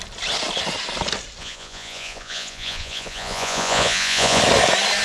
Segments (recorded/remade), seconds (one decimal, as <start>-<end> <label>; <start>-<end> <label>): 0.0-1.4 recorded; 1.4-4.4 remade; 4.4-5.0 recorded

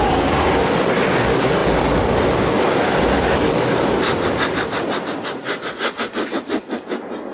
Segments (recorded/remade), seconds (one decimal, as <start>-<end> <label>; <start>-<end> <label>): 0.0-7.3 recorded

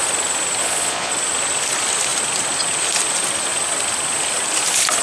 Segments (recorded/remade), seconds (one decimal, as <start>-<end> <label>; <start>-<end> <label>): 0.0-0.6 recorded; 0.6-1.1 remade; 1.1-5.0 recorded

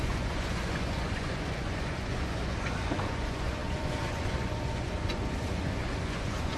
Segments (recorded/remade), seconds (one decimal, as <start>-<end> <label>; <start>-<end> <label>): 0.0-6.6 remade

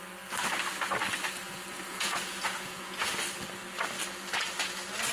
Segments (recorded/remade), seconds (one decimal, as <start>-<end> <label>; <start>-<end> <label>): 0.0-1.9 recorded; 1.9-3.1 remade; 3.1-5.1 recorded

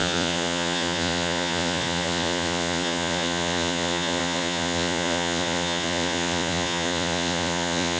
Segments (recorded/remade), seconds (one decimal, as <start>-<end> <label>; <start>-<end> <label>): 0.0-8.0 remade

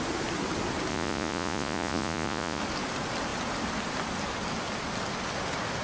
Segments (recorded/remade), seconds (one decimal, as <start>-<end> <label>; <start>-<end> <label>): 0.0-0.9 recorded; 0.9-2.6 remade; 2.6-5.8 recorded